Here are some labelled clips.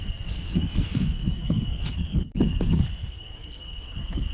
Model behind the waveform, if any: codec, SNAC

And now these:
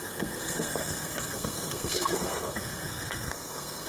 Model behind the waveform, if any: codec, SNAC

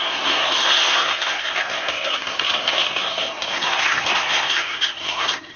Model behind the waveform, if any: codec, SNAC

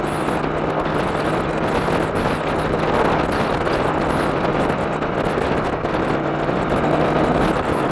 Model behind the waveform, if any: none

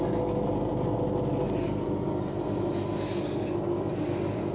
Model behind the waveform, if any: none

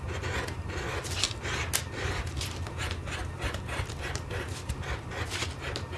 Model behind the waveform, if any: none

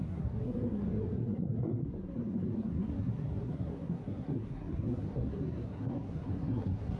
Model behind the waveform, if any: codec, SNAC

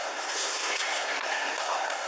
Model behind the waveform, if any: codec, SNAC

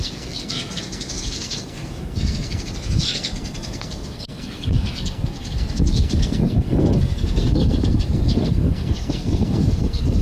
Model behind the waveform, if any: codec, SNAC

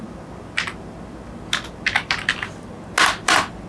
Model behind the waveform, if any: none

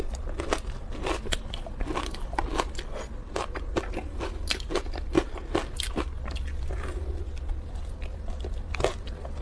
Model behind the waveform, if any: none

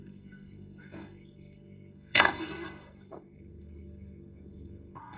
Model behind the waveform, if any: codec, SNAC